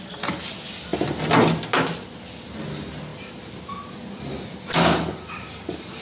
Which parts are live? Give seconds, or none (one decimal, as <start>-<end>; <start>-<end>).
0.0-6.0